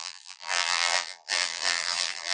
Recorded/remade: remade